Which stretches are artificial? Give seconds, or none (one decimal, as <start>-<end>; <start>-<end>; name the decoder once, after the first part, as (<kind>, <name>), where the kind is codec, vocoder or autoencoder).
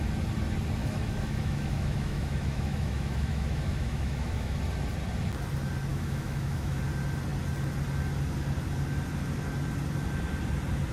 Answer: 0.8-4.6 (autoencoder, DAC-VAE); 5.9-6.8